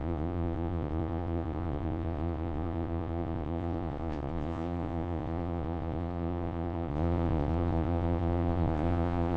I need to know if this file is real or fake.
fake